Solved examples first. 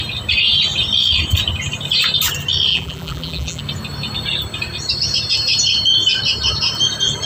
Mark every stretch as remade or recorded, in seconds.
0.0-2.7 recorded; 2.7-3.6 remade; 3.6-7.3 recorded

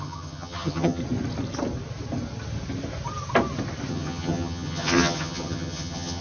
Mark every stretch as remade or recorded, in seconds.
0.0-1.0 remade; 1.0-3.9 recorded; 3.9-6.2 remade

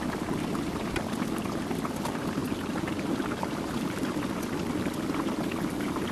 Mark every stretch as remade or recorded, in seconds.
0.0-6.1 recorded

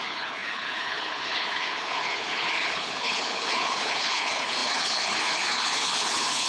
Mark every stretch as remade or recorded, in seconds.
0.0-6.5 remade

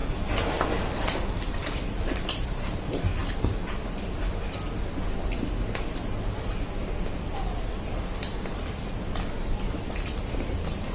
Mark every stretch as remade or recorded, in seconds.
0.0-1.5 recorded; 1.5-3.2 remade; 3.2-8.2 recorded; 8.2-10.9 remade